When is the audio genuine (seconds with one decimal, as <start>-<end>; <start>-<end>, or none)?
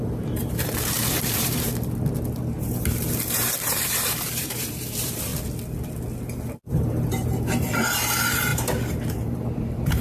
1.7-2.3; 5.3-6.7; 8.5-9.1